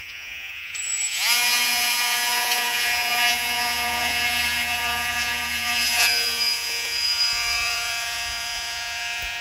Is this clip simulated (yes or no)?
yes